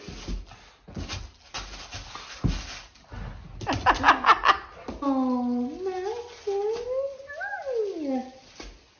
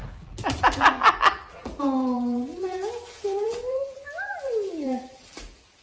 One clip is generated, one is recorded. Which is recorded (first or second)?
first